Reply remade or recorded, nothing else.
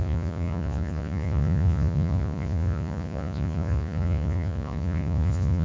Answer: remade